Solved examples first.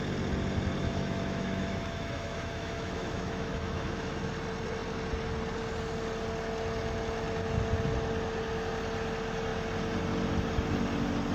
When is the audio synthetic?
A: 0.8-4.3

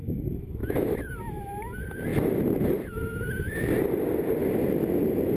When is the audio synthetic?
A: 0.6-1.1

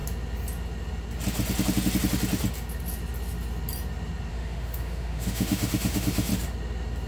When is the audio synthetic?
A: 4.3-6.3

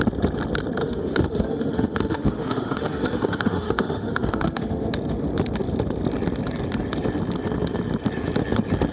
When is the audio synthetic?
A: 0.8-4.9